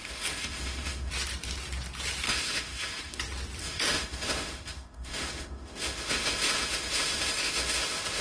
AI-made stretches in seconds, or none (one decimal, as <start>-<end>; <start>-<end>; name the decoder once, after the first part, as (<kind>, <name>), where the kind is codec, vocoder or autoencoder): 0.0-1.1 (autoencoder, DAC-VAE); 2.3-3.2; 3.6-8.2